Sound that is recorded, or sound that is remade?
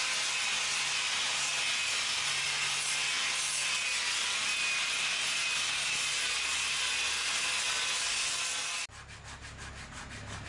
recorded